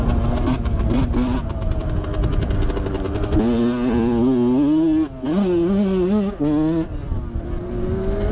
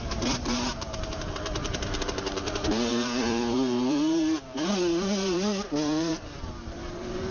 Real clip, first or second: first